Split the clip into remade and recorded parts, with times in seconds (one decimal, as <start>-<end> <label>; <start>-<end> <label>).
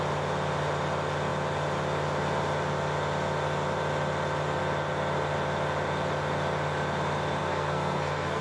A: 0.0-7.4 recorded; 7.4-8.4 remade